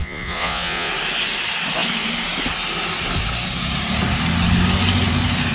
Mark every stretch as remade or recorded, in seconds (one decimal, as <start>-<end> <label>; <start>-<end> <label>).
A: 0.0-0.9 remade; 0.9-5.5 recorded